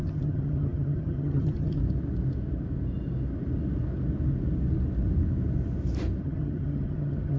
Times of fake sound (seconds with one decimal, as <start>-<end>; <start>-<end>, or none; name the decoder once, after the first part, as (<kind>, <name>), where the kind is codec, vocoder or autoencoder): 0.0-1.8 (vocoder, HiFi-GAN); 6.2-7.4